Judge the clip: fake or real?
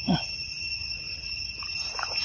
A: real